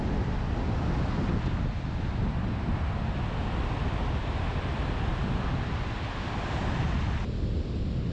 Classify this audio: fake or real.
real